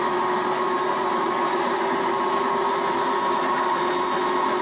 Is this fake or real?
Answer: real